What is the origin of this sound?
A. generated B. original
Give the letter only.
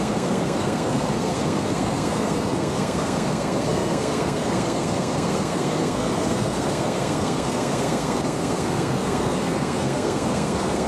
A